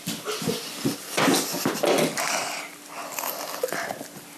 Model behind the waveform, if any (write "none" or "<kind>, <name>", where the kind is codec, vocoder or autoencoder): none